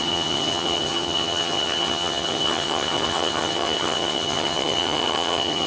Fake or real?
fake